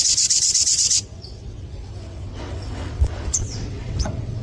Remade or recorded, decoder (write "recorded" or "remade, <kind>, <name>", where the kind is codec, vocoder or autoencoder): remade, vocoder, WaveNeXt